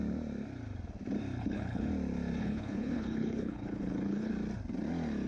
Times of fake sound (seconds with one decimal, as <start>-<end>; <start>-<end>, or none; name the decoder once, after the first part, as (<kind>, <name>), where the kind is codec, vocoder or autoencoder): 1.4-1.9 (codec, HILCodec); 2.4-4.3